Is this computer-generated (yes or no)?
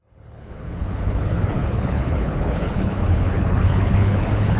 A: yes